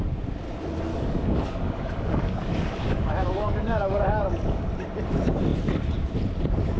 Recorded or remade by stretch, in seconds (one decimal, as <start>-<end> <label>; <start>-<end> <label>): 0.0-0.9 recorded; 0.9-4.7 remade; 4.7-6.8 recorded